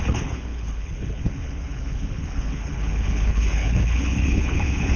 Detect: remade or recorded remade